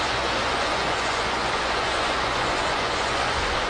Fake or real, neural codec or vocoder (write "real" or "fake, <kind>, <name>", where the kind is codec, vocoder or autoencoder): fake, vocoder, Vocos